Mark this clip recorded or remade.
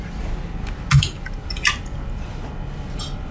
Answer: recorded